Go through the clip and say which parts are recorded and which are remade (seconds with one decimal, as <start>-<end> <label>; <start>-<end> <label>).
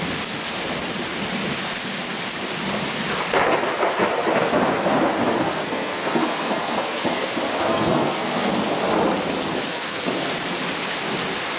0.0-5.3 recorded; 5.3-7.3 remade; 7.3-7.7 recorded; 7.7-8.5 remade; 8.5-9.7 recorded; 9.7-10.3 remade; 10.3-11.6 recorded